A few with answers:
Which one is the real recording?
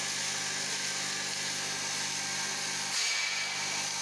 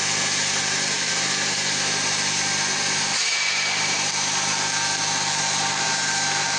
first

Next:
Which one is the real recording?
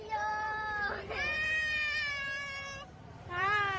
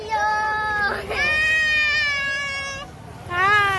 second